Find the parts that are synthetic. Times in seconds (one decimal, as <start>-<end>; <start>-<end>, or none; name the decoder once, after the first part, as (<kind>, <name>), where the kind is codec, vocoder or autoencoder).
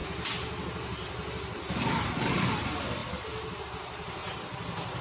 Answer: 2.1-3.0 (vocoder, BigVGAN v2); 3.6-4.2